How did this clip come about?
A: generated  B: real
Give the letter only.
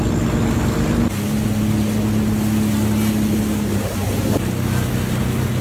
B